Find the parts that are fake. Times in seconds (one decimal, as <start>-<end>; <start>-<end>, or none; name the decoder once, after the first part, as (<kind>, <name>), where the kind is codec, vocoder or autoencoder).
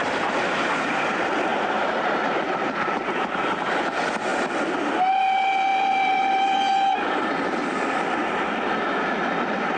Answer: 1.5-3.8 (vocoder, BigVGAN v2); 5.7-7.3